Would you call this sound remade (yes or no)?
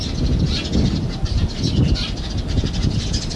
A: no